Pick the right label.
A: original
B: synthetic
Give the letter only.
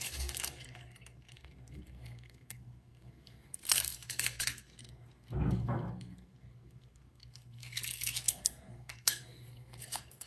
B